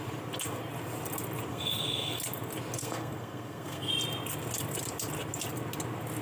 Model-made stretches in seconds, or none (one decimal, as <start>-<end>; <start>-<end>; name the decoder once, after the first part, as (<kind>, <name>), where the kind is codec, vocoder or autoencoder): 1.5-2.2 (codec, SNAC); 2.8-3.9